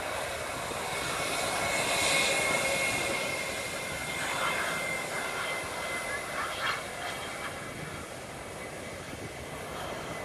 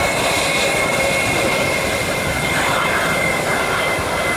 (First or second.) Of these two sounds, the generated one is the second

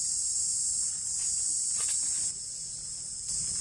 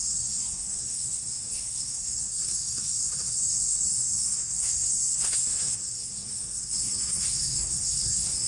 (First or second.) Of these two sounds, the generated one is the second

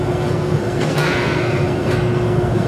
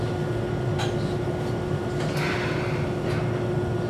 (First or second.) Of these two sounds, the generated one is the first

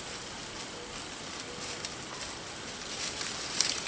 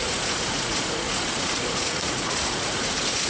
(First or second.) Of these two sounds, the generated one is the second